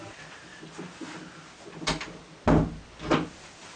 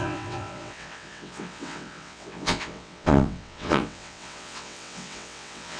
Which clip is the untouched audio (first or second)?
first